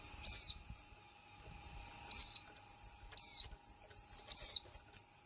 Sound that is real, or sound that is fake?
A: real